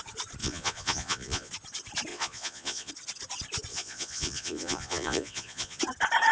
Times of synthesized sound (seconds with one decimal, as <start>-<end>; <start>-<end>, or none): 0.4-1.5; 2.1-2.9; 3.7-5.8